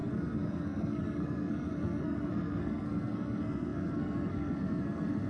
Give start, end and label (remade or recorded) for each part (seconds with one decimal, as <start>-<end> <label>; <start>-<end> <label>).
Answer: 0.0-5.3 remade